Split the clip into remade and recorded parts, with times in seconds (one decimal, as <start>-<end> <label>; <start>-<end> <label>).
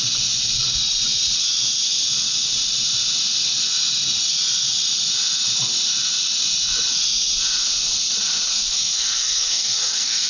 0.0-8.5 recorded; 8.5-10.3 remade